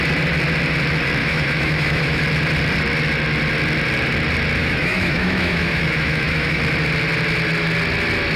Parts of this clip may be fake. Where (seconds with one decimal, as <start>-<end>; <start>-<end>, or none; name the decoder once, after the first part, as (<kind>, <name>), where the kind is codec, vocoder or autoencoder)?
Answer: 1.2-2.2 (autoencoder, DAC-VAE); 4.6-6.6